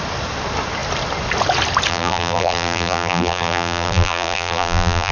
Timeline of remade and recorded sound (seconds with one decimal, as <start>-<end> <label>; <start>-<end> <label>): 0.0-1.9 recorded; 1.9-5.1 remade